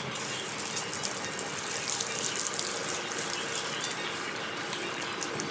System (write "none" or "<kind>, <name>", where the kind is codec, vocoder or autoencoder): none